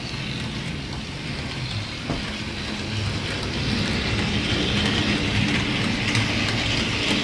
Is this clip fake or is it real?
real